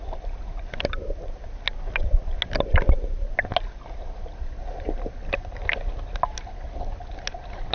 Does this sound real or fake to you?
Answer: real